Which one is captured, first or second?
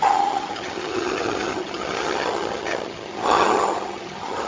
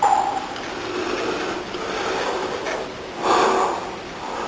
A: second